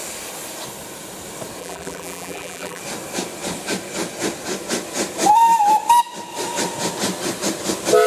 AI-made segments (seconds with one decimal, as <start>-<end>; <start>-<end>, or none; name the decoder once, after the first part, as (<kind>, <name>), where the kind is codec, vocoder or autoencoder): 1.6-2.8 (vocoder, BigVGAN v2)